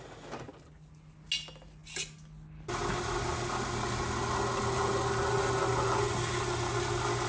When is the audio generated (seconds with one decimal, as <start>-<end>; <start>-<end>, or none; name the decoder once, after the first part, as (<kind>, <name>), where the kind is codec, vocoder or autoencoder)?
none